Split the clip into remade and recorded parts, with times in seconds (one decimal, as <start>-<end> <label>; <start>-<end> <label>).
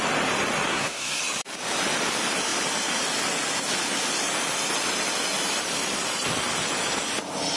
0.0-0.7 recorded; 0.7-1.2 remade; 1.2-7.6 recorded